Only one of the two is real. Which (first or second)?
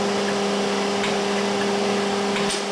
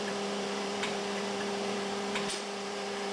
first